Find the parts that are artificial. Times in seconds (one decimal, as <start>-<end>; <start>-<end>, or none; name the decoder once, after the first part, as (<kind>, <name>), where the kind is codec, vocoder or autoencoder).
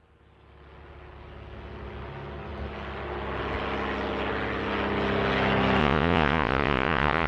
5.8-7.3 (vocoder, Vocos)